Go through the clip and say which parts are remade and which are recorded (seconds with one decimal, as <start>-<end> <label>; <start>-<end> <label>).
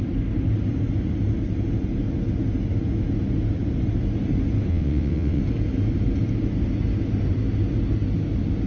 0.0-4.7 recorded; 4.7-5.4 remade; 5.4-8.7 recorded